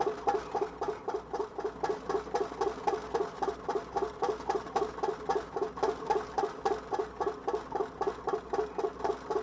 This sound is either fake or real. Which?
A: real